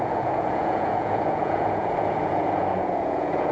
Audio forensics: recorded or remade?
remade